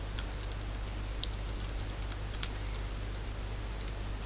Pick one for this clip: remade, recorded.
recorded